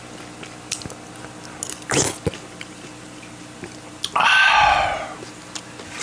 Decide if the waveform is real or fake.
real